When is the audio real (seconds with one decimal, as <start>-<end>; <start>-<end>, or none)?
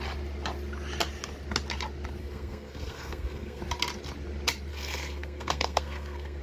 0.0-2.2; 3.6-4.7